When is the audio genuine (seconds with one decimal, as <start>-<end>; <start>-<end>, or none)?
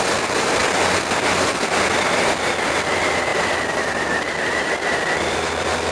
0.0-5.9